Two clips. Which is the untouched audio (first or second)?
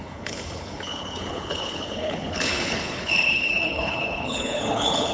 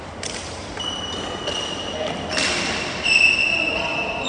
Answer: second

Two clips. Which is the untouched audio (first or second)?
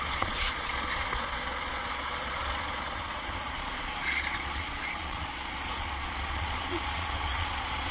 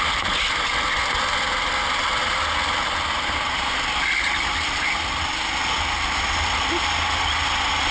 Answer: second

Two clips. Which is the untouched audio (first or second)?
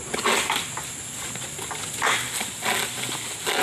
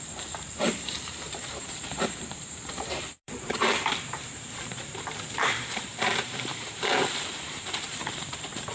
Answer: first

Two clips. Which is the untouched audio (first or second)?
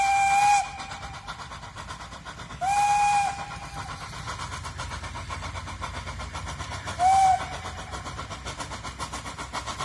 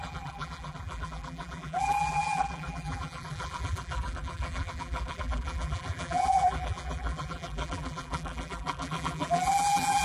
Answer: first